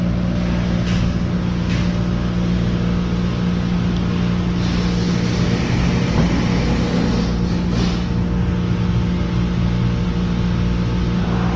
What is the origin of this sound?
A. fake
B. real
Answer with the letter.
B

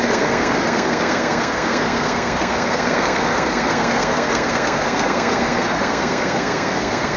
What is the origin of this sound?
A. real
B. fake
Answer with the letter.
B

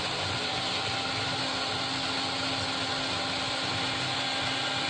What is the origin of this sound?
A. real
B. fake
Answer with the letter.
A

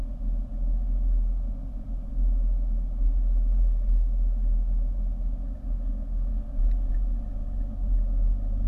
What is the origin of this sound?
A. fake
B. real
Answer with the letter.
B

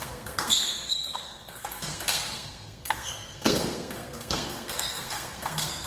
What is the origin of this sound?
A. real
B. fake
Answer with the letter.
B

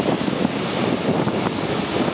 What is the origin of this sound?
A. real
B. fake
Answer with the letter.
A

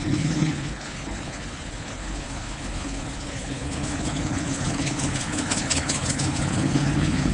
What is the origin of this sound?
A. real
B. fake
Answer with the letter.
B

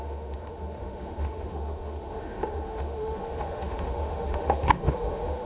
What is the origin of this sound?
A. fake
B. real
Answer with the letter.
A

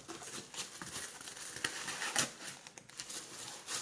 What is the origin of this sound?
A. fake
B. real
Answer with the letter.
B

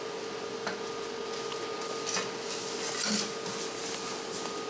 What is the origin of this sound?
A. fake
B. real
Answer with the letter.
B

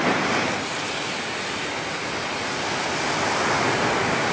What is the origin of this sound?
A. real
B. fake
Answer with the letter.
A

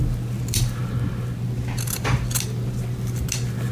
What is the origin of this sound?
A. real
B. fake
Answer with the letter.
A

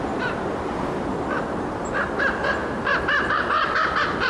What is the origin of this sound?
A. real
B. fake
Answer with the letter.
A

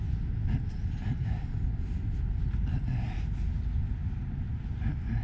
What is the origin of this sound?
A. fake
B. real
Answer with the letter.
B